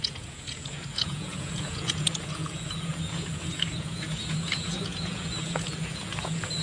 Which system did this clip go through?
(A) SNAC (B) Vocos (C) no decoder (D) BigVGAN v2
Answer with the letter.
B